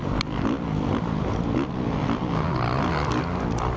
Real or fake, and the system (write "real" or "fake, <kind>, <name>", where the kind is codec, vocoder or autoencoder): real